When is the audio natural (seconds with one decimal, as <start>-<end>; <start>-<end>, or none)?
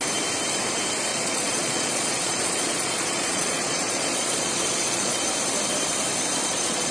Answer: 0.0-1.1; 5.2-6.4